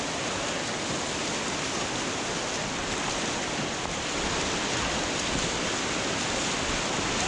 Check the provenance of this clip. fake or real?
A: real